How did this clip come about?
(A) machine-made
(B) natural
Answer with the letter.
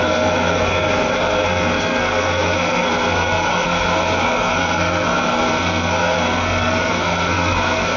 A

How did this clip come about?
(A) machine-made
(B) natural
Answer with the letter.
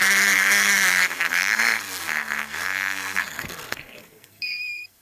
A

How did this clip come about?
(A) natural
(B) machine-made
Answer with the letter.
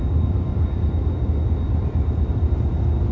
A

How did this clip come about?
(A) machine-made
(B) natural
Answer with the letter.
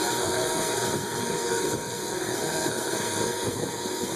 A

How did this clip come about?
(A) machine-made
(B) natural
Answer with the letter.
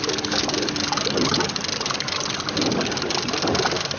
B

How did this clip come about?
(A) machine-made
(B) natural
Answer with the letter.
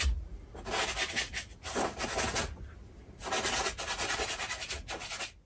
B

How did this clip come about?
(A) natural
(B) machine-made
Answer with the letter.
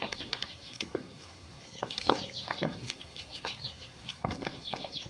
B